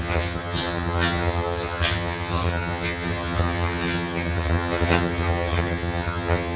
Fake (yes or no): yes